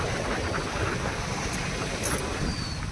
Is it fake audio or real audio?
real